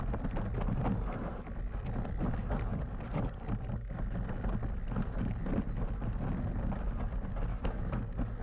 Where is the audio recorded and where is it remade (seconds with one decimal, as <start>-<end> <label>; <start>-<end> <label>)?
0.0-7.5 recorded; 7.5-8.0 remade; 8.0-8.4 recorded